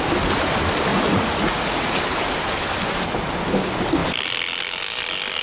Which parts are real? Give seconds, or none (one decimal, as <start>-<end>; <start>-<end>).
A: 0.0-0.9; 2.0-5.4